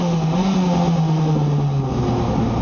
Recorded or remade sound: recorded